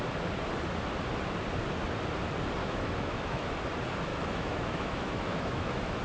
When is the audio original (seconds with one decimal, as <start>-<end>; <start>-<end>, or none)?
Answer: 0.0-2.6; 3.5-4.1

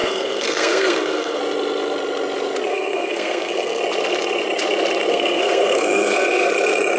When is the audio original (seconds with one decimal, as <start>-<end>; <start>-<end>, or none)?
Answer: 1.4-2.7; 3.8-5.1; 6.5-7.0

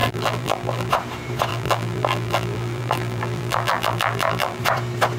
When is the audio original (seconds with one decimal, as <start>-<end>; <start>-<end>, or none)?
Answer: 0.9-1.5; 4.6-5.2